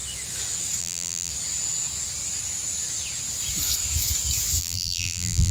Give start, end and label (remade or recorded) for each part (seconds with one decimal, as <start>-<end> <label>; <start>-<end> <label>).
0.0-0.8 recorded; 0.8-1.3 remade; 1.3-4.6 recorded; 4.6-5.5 remade